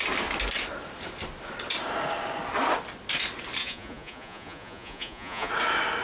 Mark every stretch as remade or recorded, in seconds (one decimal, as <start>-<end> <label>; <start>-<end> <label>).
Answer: 0.0-3.6 recorded; 3.6-5.5 remade; 5.5-6.0 recorded